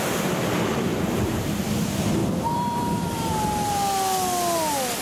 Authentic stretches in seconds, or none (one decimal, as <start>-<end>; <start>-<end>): 0.0-0.9; 1.5-2.2; 3.3-5.0